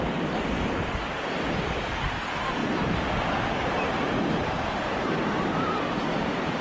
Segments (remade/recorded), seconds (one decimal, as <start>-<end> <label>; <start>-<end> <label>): 0.0-2.6 recorded; 2.6-6.6 remade